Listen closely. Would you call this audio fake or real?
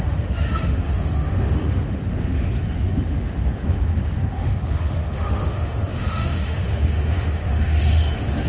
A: fake